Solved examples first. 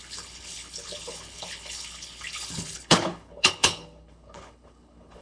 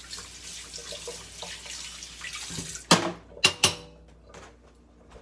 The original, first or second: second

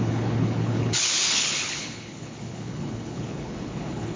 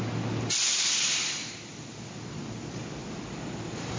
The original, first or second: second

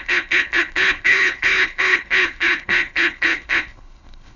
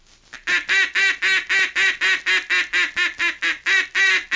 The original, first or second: second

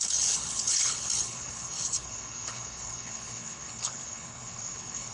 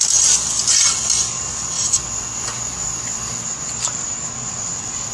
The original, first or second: second